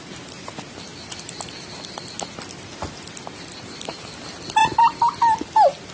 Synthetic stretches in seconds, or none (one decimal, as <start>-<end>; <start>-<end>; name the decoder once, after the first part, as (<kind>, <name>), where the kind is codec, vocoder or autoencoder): none